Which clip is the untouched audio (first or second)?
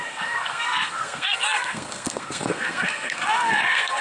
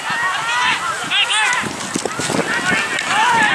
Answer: second